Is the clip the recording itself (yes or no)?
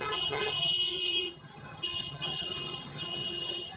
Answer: no